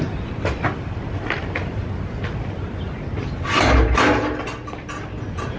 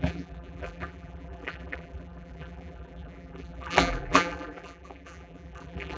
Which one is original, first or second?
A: first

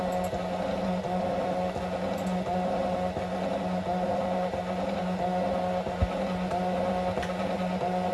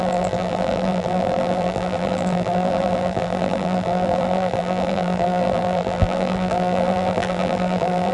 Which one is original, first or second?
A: first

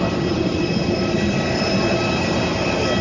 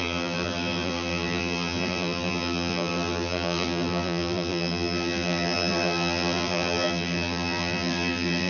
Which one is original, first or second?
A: first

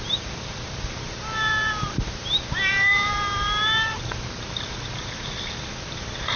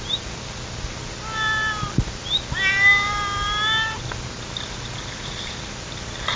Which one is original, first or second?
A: second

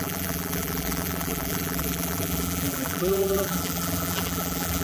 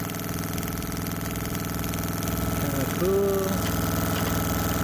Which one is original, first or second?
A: second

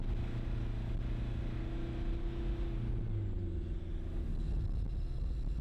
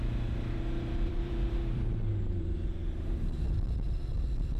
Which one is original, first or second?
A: first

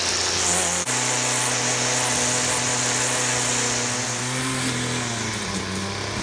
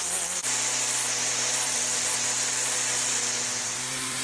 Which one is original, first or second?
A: first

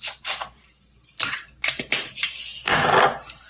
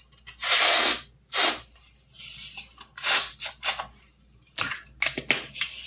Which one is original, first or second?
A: second